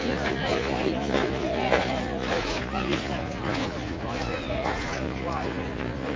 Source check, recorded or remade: remade